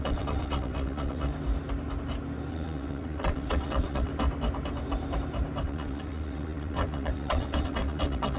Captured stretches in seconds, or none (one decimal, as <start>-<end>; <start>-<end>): 1.3-2.5; 4.1-5.6